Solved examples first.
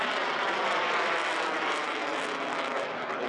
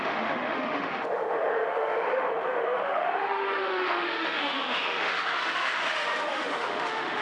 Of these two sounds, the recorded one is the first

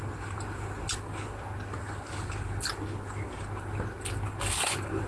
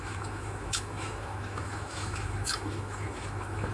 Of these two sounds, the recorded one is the first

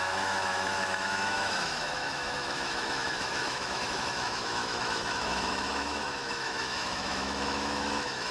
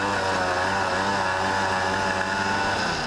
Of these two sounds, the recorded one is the second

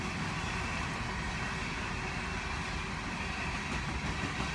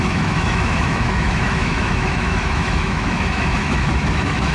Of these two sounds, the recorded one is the first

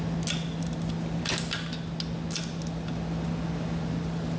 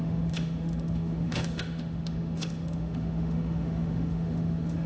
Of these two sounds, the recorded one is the first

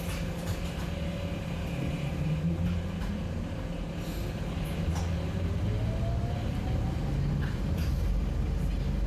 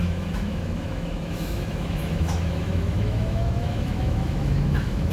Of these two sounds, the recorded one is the first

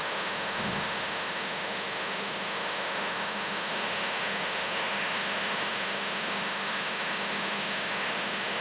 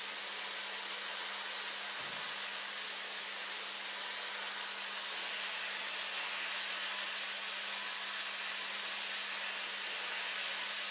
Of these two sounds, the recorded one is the second